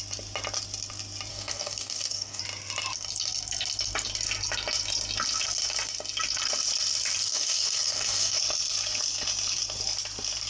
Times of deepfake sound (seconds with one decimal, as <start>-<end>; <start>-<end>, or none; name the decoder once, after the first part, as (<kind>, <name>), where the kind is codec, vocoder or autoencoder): 1.3-2.4 (codec, DAC); 7.2-8.4